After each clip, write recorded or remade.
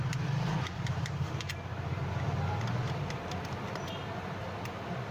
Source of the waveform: recorded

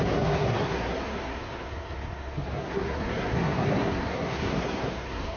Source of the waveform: remade